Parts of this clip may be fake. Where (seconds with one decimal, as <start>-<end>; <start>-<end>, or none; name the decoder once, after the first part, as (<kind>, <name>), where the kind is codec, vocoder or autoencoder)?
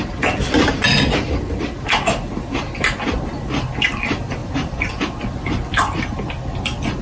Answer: 4.4-4.9 (vocoder, BigVGAN v2)